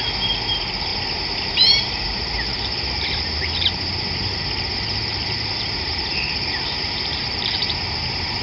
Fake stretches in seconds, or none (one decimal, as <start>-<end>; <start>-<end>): 0.0-0.9; 1.4-8.4